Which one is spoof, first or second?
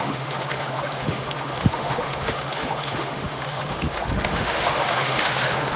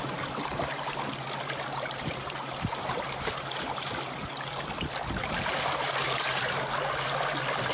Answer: first